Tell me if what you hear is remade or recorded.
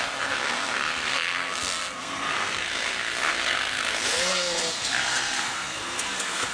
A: remade